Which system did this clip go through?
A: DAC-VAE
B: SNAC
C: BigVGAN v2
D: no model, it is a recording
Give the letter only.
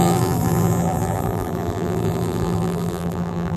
C